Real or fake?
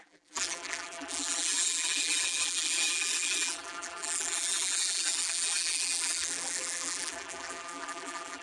fake